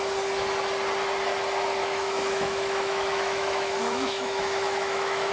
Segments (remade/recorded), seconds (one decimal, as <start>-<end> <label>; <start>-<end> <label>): 0.0-1.8 recorded; 1.8-5.3 remade